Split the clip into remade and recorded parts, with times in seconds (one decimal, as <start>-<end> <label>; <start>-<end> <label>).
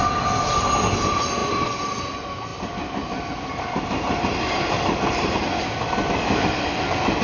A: 0.0-2.5 recorded; 2.5-5.4 remade; 5.4-7.2 recorded